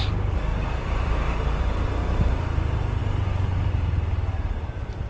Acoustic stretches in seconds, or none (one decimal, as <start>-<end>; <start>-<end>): 0.0-0.5; 1.9-5.1